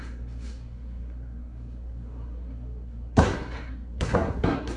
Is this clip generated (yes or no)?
yes